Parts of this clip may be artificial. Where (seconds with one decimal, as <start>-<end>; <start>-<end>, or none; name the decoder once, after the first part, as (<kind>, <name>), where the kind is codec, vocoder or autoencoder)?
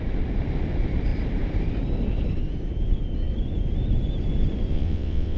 4.7-5.4 (vocoder, WaveNeXt)